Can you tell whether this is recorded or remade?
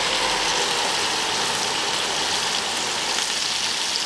recorded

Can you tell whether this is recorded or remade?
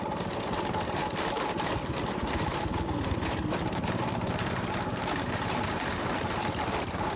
remade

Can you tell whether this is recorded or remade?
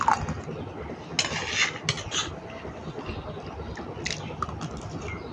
recorded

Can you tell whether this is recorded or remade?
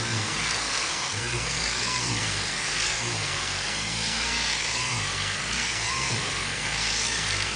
remade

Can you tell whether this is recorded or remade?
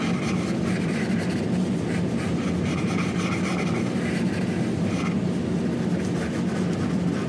recorded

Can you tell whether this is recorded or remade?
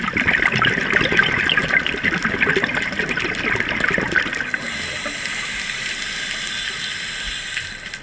recorded